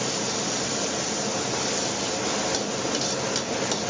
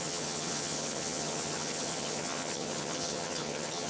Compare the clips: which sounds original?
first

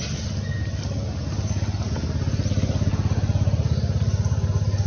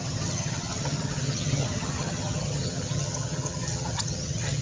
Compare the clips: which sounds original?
first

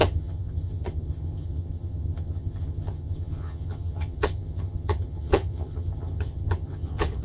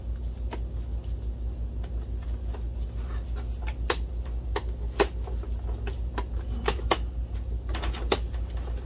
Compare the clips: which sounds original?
second